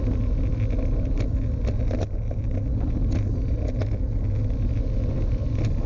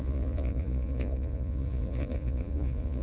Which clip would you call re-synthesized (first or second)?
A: second